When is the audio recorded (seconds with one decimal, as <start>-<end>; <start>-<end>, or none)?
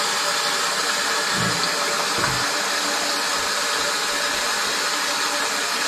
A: 0.0-3.3; 3.9-5.9